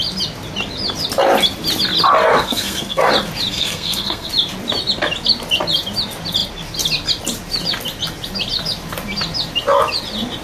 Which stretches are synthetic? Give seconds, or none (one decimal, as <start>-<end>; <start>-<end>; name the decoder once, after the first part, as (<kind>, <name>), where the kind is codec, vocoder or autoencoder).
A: 2.3-3.1 (codec, SNAC); 3.5-4.3